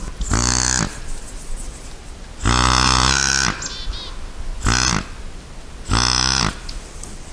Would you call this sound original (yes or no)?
yes